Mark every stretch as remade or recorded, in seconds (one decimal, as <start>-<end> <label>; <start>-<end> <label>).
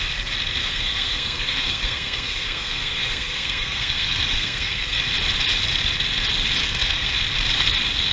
0.0-0.6 recorded; 0.6-5.0 remade; 5.0-6.6 recorded; 6.6-7.1 remade; 7.1-8.1 recorded